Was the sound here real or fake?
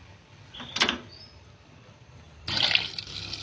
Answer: real